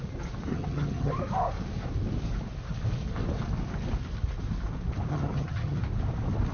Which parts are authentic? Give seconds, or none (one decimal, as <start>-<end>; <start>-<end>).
0.0-0.5; 1.1-5.1; 5.8-6.5